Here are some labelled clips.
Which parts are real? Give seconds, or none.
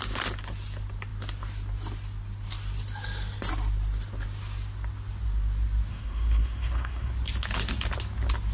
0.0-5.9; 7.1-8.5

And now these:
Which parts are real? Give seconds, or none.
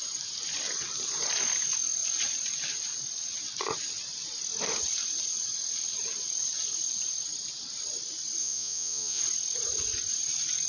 0.0-8.4; 9.2-10.7